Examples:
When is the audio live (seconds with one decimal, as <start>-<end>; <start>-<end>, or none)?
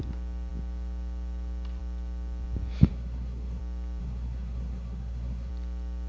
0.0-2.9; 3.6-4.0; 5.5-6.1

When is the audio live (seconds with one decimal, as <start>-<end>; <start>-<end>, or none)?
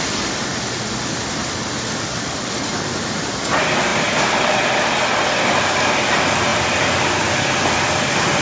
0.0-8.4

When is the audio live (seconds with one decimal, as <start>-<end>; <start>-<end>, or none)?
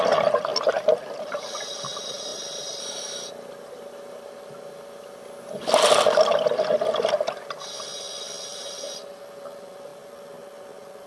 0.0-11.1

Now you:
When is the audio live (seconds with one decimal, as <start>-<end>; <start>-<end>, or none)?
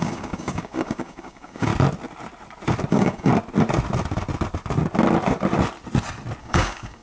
1.7-2.9; 3.3-6.4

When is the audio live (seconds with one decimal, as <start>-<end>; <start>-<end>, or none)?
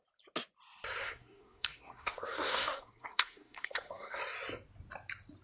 0.0-1.0; 4.2-5.4